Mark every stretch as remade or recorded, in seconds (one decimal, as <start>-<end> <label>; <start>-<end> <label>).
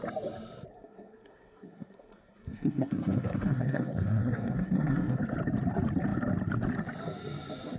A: 0.0-0.7 recorded; 0.7-5.2 remade; 5.2-7.8 recorded